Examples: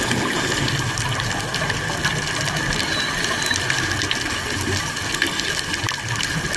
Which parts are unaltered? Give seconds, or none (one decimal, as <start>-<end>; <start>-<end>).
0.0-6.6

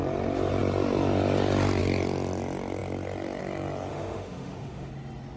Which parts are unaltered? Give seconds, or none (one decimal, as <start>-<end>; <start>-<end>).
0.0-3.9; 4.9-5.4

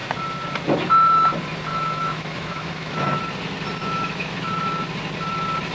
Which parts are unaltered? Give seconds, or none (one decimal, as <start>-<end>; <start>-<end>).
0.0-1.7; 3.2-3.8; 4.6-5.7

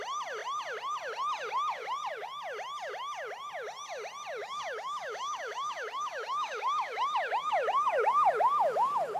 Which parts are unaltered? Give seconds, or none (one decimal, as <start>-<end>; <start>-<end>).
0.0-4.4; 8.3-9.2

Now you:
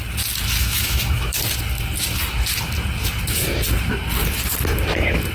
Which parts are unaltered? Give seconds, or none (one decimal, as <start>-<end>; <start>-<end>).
0.0-0.6; 1.4-5.3

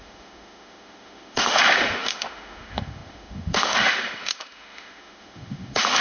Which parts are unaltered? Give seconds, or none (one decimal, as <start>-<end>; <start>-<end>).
none